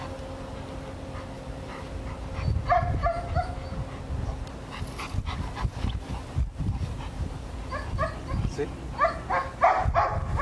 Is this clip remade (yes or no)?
no